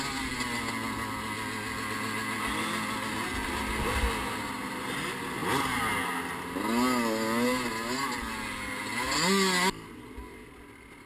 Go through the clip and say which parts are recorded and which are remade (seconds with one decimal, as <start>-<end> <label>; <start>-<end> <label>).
0.0-11.1 recorded